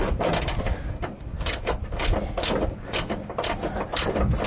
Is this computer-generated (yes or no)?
no